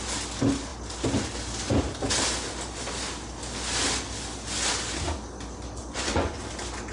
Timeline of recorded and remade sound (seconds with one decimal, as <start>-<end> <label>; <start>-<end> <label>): 0.0-5.8 recorded; 5.8-6.4 remade; 6.4-6.9 recorded